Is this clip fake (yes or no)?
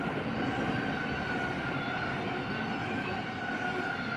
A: no